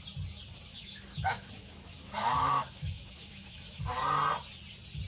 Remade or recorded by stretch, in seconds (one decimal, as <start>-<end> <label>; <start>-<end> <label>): 0.0-0.7 recorded; 0.7-3.8 remade; 3.8-5.1 recorded